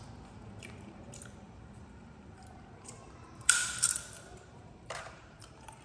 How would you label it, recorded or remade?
remade